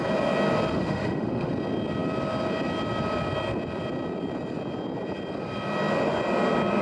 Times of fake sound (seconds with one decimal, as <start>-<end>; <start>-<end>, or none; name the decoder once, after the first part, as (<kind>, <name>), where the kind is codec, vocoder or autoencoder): 0.7-1.5 (autoencoder, DAC-VAE)